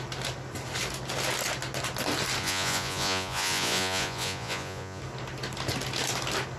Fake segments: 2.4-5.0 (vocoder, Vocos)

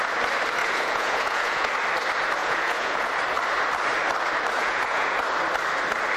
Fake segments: 0.6-1.7 (vocoder, Vocos); 2.4-3.1; 4.6-5.2

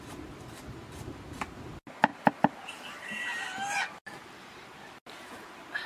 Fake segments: none

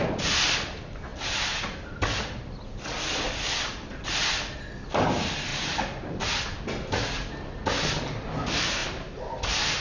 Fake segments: none

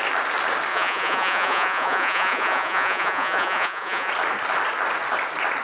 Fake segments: 0.7-4.1 (vocoder, Vocos)

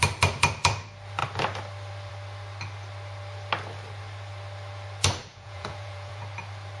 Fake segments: 5.3-6.2 (vocoder, Vocos)

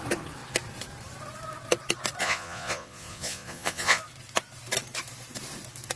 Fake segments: 2.2-4.0 (vocoder, Vocos)

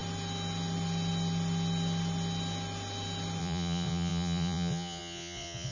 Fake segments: 3.4-5.7 (vocoder, Vocos)